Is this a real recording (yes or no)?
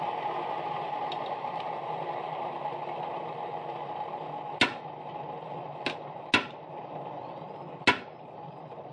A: yes